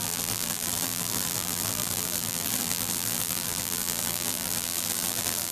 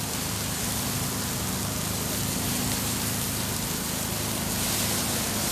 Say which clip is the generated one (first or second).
first